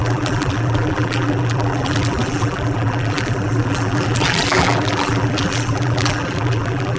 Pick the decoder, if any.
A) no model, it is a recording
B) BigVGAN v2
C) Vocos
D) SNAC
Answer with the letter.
B